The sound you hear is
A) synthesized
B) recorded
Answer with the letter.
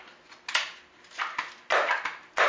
B